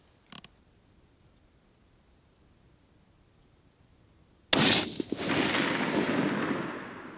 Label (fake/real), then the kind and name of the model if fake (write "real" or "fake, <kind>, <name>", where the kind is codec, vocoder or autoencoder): real